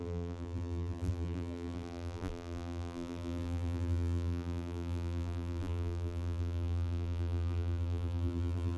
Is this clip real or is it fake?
fake